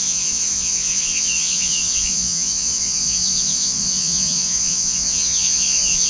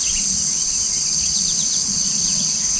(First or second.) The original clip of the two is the second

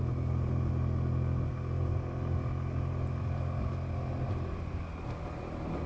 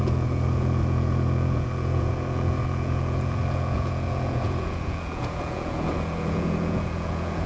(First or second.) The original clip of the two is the first